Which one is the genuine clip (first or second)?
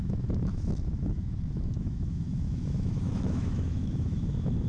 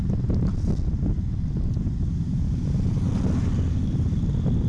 second